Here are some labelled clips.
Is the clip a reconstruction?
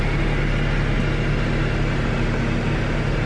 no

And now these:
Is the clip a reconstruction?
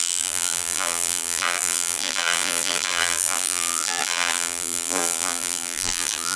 yes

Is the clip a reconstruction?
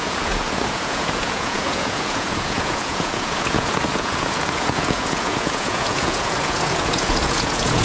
yes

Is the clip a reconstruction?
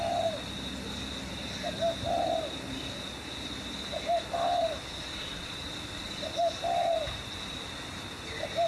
no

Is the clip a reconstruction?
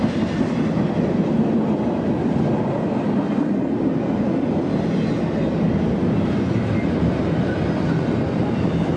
no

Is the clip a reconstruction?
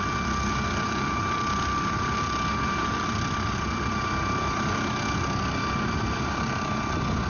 no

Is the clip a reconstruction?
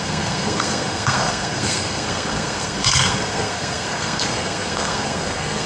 yes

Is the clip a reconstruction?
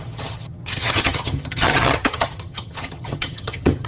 yes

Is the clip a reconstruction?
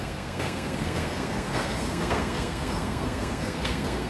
yes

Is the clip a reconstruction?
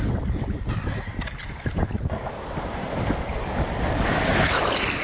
no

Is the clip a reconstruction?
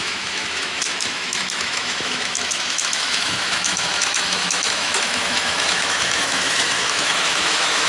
yes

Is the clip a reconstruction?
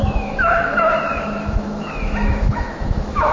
yes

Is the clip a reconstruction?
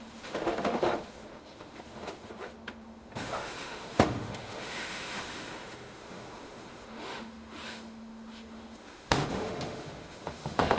yes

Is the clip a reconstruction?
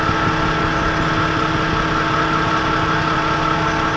no